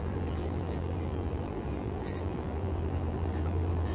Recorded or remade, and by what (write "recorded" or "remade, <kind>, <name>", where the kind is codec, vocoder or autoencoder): remade, vocoder, BigVGAN v2